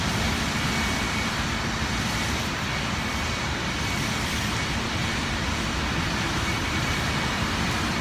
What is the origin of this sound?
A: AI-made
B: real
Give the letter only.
B